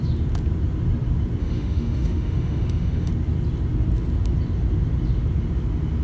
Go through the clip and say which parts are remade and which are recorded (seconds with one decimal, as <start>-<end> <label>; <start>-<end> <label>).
0.0-1.4 recorded; 1.4-3.1 remade; 3.1-6.0 recorded